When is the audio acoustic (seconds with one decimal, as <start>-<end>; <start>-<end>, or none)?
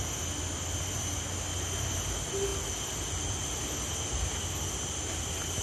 0.0-5.6